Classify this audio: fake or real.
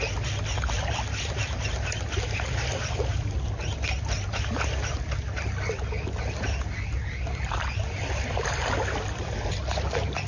real